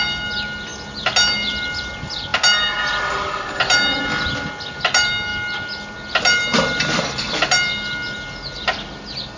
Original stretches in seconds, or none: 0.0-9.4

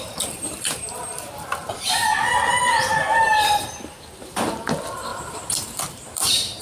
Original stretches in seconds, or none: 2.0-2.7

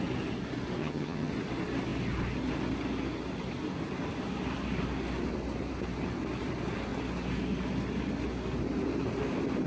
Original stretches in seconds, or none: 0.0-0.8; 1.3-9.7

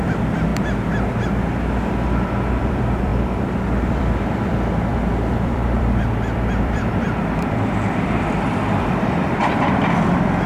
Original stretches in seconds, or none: 0.5-2.6

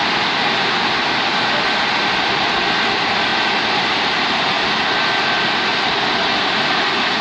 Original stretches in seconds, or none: 0.0-7.2

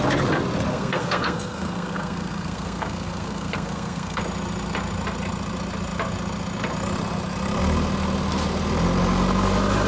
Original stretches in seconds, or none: 0.0-0.7; 4.2-9.9

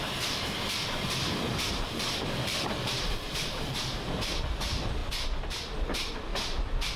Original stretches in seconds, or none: 0.0-1.7; 3.7-7.0

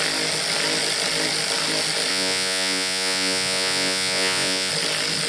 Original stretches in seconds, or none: 0.0-2.1; 4.7-5.3